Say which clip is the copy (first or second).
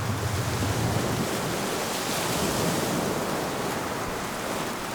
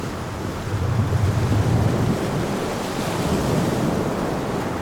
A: second